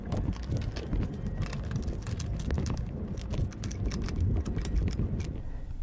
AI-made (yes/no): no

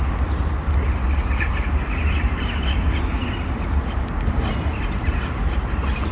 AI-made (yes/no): no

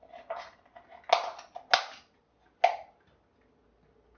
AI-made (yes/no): no